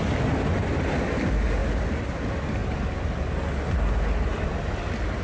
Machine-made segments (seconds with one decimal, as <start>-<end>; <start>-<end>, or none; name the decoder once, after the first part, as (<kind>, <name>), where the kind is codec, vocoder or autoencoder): none

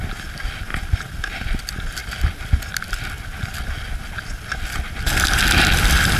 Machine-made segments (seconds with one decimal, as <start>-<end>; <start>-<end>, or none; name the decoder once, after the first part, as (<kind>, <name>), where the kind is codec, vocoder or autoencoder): none

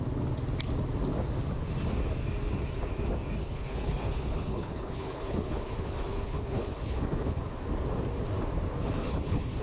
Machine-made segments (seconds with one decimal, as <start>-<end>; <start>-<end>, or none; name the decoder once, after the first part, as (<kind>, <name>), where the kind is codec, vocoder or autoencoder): 3.4-7.4 (codec, HILCodec); 9.0-9.6